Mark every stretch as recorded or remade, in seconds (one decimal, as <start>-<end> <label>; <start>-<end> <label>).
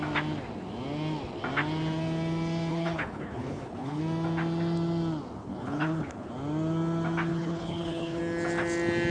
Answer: 0.0-2.7 recorded; 2.7-4.0 remade; 4.0-5.4 recorded; 5.4-6.3 remade; 6.3-7.3 recorded; 7.3-8.2 remade; 8.2-9.1 recorded